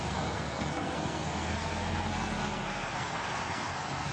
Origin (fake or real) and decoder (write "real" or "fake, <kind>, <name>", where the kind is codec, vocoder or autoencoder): fake, codec, SNAC